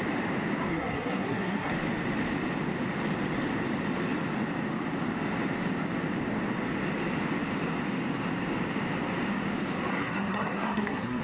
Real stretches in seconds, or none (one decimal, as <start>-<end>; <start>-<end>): 0.0-0.7; 1.7-9.9